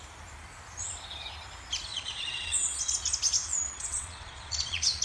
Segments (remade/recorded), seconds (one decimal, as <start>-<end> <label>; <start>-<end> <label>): 0.0-1.9 recorded; 1.9-2.8 remade; 2.8-3.4 recorded; 3.4-5.0 remade